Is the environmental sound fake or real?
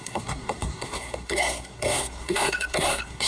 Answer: fake